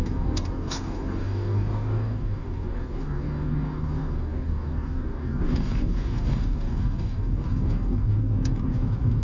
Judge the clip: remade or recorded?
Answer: remade